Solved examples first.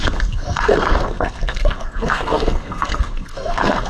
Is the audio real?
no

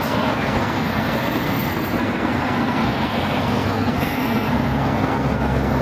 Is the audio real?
no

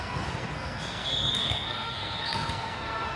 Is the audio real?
no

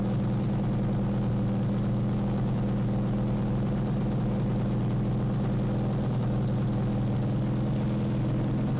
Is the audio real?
yes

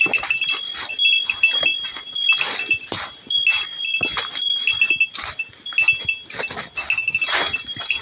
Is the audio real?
yes